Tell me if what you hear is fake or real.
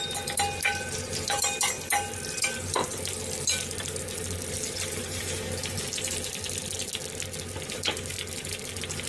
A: real